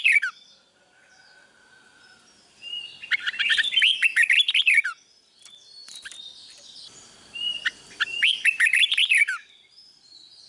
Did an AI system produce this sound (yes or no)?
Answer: yes